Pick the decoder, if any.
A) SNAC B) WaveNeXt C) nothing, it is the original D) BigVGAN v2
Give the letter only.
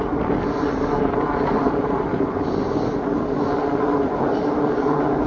C